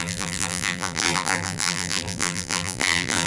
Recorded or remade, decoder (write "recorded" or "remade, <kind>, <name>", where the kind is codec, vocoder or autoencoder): remade, vocoder, BigVGAN v2